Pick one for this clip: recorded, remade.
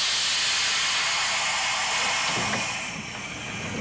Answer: recorded